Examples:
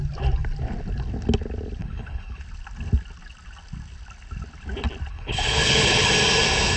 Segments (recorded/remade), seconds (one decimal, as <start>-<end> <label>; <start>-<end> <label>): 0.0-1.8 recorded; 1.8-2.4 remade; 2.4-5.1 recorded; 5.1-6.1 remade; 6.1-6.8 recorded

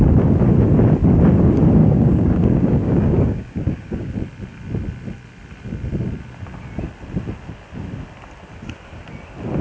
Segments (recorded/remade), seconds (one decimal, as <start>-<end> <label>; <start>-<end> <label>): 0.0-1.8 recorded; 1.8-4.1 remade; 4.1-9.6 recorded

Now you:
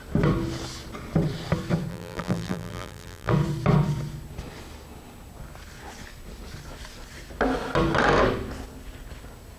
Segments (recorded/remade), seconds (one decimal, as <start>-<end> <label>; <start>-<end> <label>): 0.0-1.9 recorded; 1.9-3.3 remade; 3.3-9.6 recorded

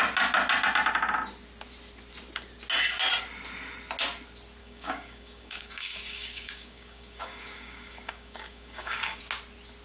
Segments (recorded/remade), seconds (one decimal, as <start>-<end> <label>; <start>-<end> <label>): 0.0-4.6 recorded; 4.6-9.2 remade; 9.2-9.8 recorded

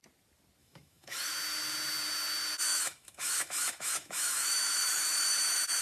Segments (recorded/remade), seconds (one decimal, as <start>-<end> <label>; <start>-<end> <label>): 0.0-0.6 recorded; 0.6-1.3 remade; 1.3-2.7 recorded; 2.7-5.8 remade

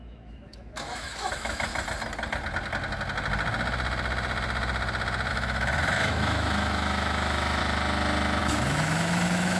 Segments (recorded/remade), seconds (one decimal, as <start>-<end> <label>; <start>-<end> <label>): 0.0-1.7 remade; 1.7-5.3 recorded; 5.3-7.6 remade; 7.6-8.4 recorded; 8.4-9.6 remade

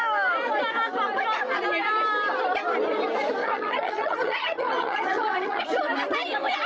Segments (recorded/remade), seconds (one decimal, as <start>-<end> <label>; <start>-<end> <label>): 0.0-3.4 recorded; 3.4-5.6 remade; 5.6-6.7 recorded

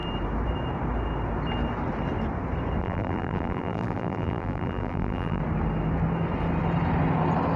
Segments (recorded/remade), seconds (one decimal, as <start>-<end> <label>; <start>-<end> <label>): 0.0-2.8 recorded; 2.8-5.4 remade; 5.4-7.6 recorded